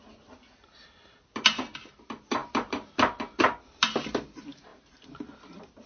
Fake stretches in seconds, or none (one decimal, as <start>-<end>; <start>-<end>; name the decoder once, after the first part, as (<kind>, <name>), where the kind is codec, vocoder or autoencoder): none